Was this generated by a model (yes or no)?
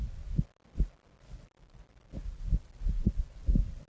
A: no